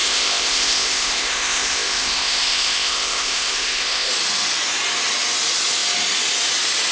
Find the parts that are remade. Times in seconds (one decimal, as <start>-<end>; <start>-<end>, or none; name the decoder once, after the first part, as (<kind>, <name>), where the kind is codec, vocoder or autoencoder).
0.0-4.1 (codec, ZipCodec)